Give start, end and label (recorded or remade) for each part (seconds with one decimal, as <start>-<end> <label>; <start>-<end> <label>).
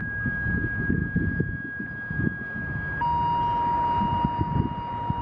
0.0-5.2 recorded